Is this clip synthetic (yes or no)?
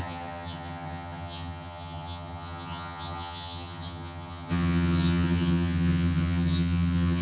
yes